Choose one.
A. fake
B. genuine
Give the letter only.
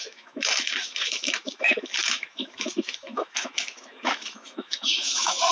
A